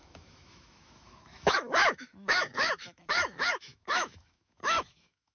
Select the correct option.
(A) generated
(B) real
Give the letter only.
A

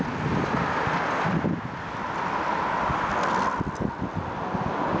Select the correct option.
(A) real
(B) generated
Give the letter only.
A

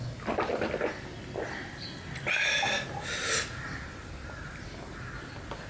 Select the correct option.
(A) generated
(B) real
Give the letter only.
B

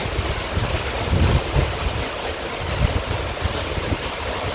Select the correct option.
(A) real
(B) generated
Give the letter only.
A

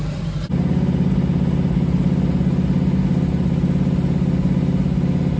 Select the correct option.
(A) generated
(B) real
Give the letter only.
B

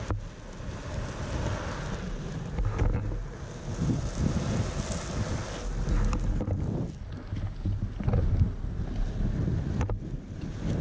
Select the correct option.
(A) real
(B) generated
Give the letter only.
A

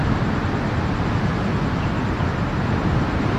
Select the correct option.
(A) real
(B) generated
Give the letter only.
A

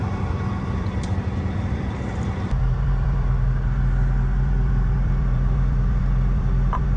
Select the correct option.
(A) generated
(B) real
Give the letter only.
A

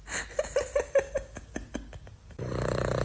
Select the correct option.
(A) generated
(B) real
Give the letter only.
B